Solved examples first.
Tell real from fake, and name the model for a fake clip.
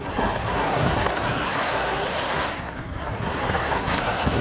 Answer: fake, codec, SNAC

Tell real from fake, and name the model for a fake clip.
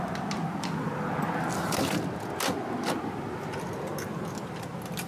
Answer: real